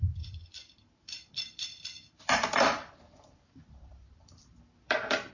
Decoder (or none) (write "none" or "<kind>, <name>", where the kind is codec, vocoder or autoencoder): vocoder, BigVGAN v2